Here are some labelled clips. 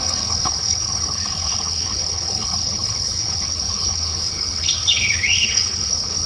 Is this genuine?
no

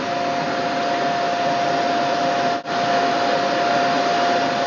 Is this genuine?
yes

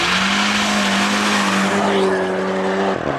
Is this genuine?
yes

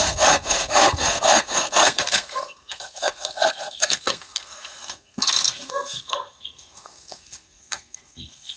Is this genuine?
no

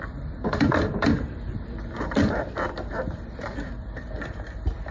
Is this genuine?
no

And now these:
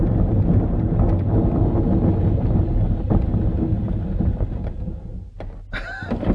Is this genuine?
yes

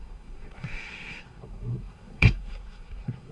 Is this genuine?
no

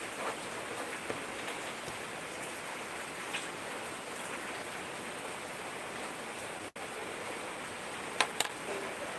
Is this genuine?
yes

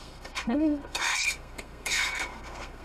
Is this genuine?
no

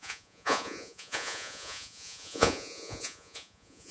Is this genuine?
no